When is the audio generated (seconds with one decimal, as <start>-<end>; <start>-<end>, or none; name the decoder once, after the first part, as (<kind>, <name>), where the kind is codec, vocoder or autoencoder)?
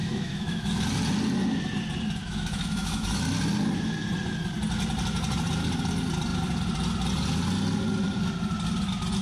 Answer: 0.0-0.8 (autoencoder, DAC-VAE); 2.2-3.2